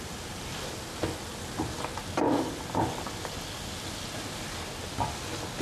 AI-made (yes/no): no